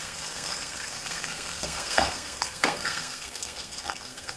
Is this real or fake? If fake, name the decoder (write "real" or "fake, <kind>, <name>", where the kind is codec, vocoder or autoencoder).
fake, codec, SNAC